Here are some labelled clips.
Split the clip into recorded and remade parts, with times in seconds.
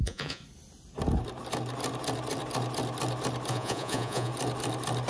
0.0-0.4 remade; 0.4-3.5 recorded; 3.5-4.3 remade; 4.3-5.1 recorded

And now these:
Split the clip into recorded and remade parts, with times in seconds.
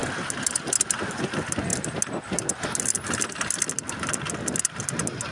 0.0-5.3 recorded